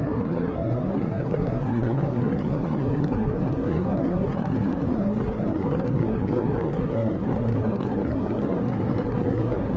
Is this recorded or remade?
remade